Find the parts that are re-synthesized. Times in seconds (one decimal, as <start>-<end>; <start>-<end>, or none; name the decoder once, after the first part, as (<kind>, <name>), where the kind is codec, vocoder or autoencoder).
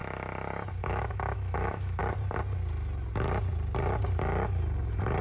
0.8-2.0 (autoencoder, DAC-VAE)